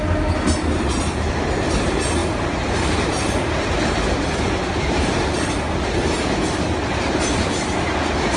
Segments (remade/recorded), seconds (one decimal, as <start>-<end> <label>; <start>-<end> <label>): 0.0-8.4 recorded